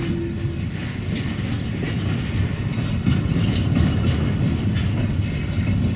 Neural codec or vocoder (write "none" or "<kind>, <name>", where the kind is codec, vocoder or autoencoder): none